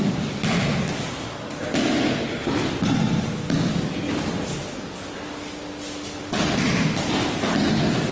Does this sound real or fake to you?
real